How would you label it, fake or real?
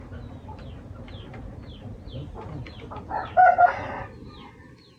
real